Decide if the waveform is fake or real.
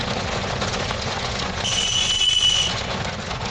fake